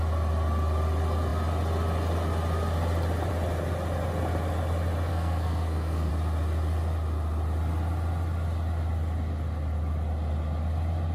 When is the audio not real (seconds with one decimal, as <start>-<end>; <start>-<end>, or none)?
5.1-6.1